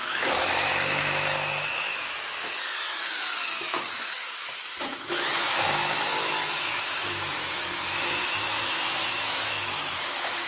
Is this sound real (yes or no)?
no